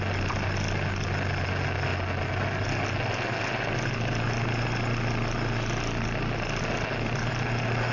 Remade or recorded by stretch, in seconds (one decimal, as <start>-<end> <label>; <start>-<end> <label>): 0.0-7.9 recorded